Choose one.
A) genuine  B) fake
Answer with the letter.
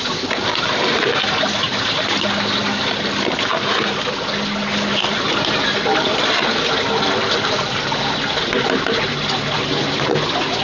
A